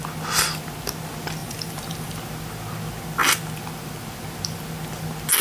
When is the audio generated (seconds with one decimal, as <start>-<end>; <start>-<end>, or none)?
1.4-2.1